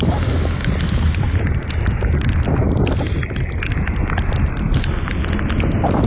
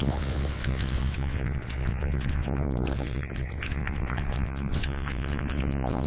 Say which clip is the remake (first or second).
second